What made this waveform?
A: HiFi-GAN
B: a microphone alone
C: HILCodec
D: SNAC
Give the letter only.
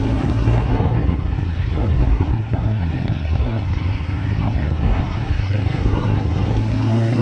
D